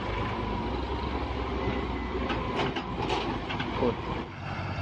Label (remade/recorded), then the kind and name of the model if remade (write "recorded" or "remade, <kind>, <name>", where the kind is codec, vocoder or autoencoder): recorded